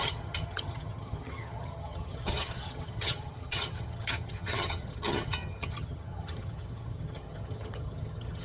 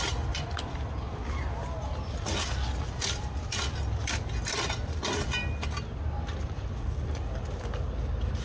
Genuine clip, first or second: second